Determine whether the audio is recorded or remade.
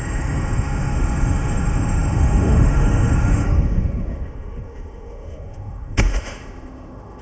remade